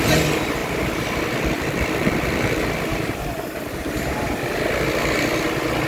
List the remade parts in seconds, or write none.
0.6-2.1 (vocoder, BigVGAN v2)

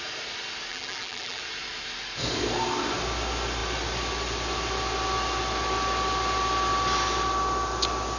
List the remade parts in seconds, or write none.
0.7-1.4 (vocoder, BigVGAN v2)